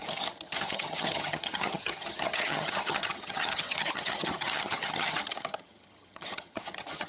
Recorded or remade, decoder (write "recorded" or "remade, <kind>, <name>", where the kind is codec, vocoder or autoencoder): remade, vocoder, HiFi-GAN